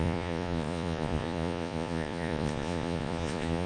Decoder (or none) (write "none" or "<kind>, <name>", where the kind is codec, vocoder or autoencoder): vocoder, Vocos